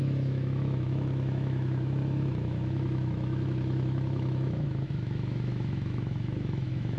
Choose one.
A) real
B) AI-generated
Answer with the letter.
B